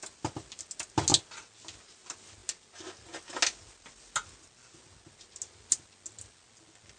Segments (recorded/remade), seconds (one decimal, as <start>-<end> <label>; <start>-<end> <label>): 0.0-7.0 recorded